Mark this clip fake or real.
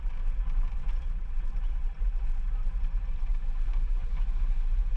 fake